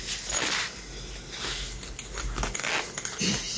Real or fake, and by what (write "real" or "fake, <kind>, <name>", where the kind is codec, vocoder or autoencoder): real